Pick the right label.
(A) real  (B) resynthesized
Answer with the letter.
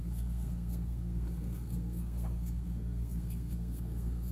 B